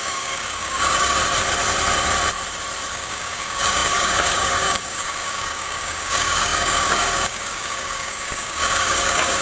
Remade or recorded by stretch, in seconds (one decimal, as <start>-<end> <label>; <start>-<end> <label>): 0.0-1.2 remade; 1.2-2.9 recorded; 2.9-9.4 remade